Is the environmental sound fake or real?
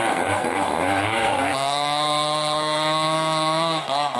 fake